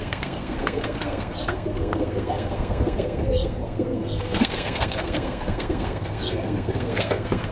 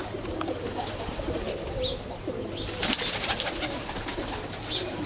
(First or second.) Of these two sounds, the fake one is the first